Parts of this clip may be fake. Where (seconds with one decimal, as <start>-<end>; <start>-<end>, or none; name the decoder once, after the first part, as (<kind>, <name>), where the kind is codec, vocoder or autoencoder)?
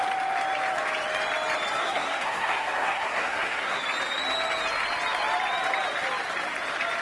1.8-3.8 (codec, SNAC)